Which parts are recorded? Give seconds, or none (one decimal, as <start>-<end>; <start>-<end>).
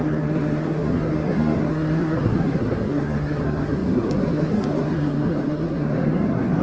none